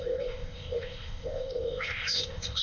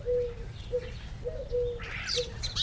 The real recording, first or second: second